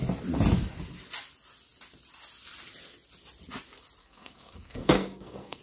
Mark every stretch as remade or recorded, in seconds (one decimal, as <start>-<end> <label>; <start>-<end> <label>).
0.0-4.0 recorded; 4.0-5.6 remade